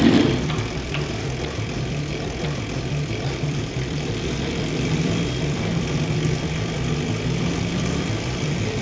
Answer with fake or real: fake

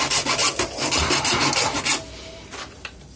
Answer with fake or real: real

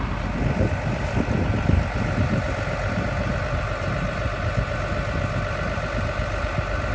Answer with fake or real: real